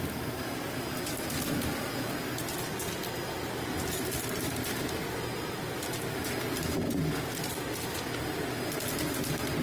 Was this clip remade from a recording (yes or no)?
no